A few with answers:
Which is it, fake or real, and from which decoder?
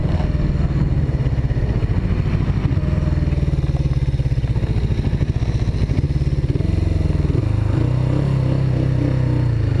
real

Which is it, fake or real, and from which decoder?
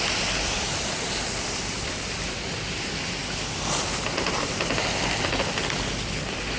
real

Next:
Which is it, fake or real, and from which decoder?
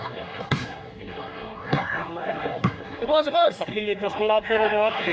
fake, codec, SNAC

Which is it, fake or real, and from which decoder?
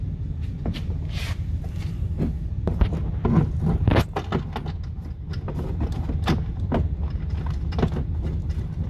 real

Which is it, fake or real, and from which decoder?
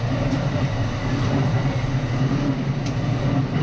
real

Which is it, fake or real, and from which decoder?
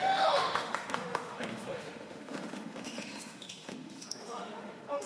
fake, autoencoder, DAC-VAE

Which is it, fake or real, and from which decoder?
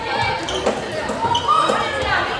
real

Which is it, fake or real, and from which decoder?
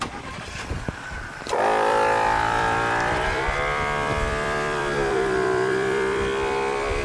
fake, vocoder, BigVGAN v2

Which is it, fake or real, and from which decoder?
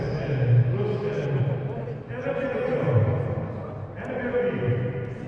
real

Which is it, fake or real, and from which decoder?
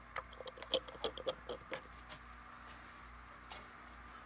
real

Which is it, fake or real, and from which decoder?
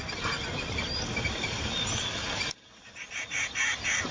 real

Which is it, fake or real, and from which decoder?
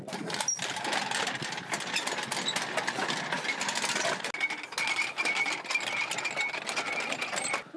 real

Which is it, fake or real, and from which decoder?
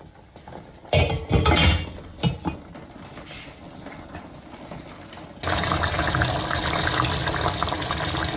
real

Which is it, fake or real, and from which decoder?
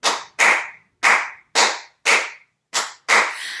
real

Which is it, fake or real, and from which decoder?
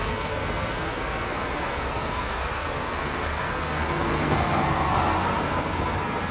fake, codec, SNAC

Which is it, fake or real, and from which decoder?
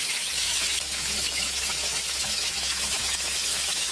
fake, autoencoder, DAC-VAE